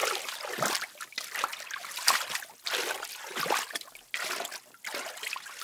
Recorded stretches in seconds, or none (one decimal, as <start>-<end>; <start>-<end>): 0.6-1.5; 2.2-5.6